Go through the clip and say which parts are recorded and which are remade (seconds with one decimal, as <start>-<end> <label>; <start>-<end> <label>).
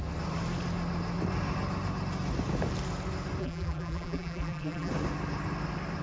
0.0-3.4 recorded; 3.4-4.9 remade; 4.9-6.0 recorded